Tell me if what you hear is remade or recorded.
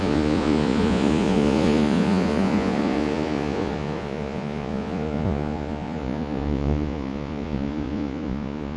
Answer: remade